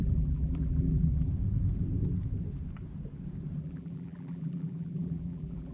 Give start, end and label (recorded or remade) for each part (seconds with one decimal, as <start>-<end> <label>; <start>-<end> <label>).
0.0-1.3 remade; 1.3-3.6 recorded; 3.6-5.7 remade